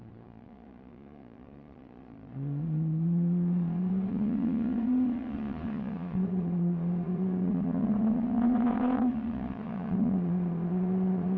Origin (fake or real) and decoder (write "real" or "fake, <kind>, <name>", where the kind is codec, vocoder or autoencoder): fake, vocoder, Vocos